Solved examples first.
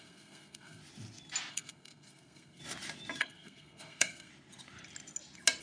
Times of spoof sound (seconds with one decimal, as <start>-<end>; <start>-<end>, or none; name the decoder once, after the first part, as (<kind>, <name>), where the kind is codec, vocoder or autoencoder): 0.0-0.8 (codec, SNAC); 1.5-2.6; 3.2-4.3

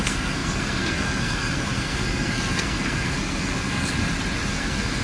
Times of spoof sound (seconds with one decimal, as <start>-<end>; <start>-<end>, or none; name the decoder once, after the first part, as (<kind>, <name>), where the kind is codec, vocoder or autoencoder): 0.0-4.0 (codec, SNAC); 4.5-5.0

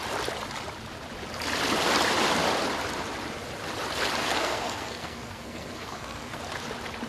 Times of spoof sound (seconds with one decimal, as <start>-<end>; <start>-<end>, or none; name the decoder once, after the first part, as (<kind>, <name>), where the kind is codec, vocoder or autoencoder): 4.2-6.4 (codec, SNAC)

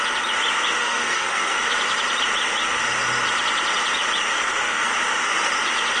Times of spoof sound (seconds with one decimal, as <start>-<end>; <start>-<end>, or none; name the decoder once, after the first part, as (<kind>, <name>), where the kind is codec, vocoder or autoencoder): 0.8-1.6 (codec, SNAC); 4.3-4.9

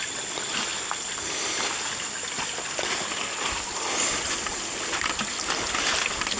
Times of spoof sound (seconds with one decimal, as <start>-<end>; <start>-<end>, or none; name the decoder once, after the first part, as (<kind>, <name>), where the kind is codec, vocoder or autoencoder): none